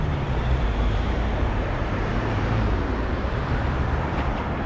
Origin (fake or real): fake